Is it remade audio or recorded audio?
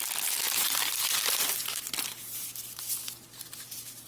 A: recorded